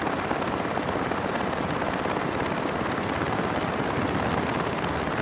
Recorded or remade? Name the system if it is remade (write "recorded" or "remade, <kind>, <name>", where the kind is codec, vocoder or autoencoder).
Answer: recorded